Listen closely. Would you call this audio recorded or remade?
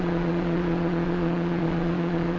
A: remade